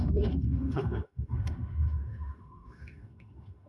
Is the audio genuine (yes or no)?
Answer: no